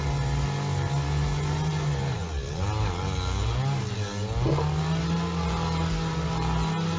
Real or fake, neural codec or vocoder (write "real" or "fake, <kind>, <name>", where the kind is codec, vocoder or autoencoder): real